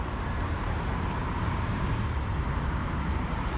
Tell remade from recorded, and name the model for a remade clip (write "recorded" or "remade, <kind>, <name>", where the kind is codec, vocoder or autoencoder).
remade, vocoder, BigVGAN v2